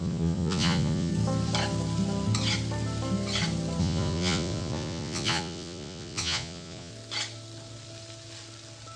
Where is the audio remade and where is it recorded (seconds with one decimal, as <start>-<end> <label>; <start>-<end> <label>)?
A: 0.0-1.1 remade; 1.1-3.8 recorded; 3.8-6.9 remade; 6.9-9.0 recorded